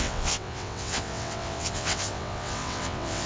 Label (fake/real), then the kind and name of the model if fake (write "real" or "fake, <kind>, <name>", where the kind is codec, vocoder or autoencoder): fake, vocoder, WaveNeXt